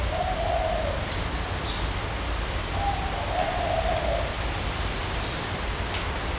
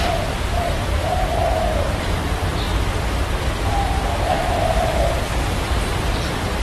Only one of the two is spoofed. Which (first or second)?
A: second